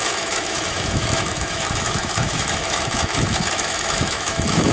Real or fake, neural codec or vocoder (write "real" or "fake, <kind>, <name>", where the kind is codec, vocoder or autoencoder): fake, autoencoder, DAC-VAE